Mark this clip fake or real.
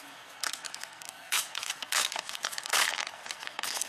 fake